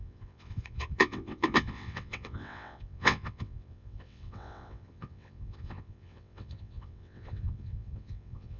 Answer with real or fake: fake